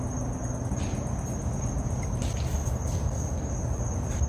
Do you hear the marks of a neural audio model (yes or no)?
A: no